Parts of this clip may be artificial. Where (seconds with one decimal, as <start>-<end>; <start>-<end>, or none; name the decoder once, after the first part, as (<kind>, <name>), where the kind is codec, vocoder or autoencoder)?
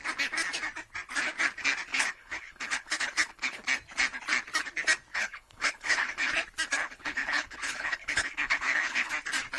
1.9-3.6 (codec, HILCodec); 5.1-6.3; 6.8-9.1